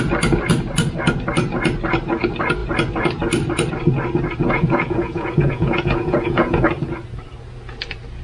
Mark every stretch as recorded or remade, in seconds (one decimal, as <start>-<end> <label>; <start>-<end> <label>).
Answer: 0.0-4.4 recorded; 4.4-6.7 remade; 6.7-8.2 recorded